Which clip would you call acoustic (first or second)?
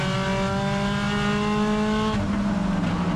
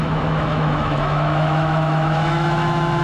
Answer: first